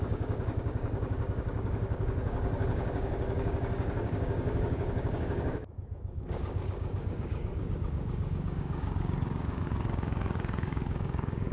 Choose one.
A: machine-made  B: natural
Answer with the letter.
A